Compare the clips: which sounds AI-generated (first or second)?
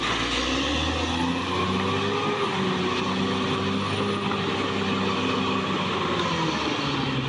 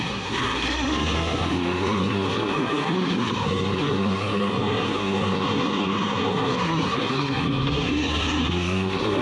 second